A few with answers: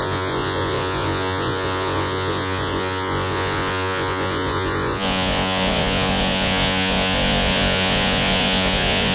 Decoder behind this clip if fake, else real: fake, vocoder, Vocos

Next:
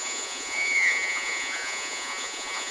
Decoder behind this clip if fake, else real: fake, vocoder, Vocos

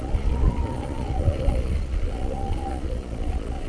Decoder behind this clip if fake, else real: fake, vocoder, Vocos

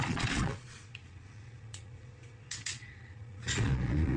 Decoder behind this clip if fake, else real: fake, vocoder, Vocos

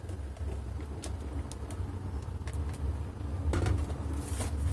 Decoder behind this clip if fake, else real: real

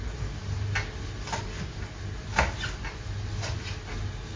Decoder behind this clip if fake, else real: real